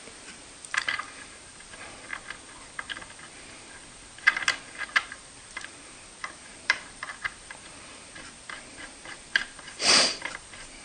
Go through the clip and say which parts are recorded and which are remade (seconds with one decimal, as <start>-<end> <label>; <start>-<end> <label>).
0.0-2.1 remade; 2.1-4.8 recorded; 4.8-10.8 remade